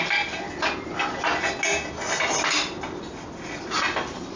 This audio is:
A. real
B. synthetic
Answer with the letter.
A